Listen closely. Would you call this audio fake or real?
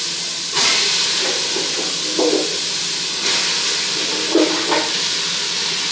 real